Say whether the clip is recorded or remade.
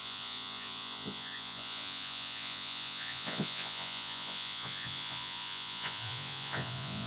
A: remade